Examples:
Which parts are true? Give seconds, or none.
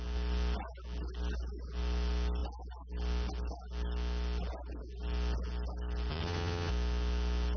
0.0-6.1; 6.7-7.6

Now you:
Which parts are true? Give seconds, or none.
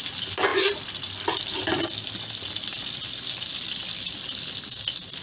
0.0-0.5; 1.7-2.7; 4.2-5.2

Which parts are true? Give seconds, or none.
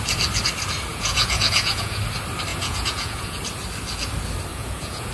0.0-0.9; 2.0-2.5; 3.4-4.5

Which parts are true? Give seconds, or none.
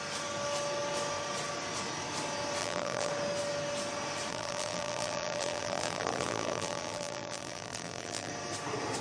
0.0-2.6; 3.1-4.3; 8.3-9.0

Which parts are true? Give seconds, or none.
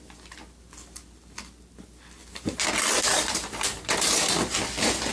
0.0-2.2; 2.7-3.1; 4.2-5.1